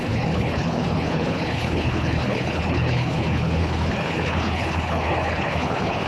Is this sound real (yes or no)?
no